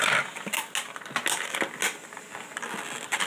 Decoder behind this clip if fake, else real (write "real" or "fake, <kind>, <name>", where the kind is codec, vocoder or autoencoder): real